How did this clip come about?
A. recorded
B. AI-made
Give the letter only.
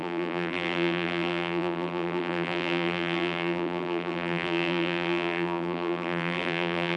B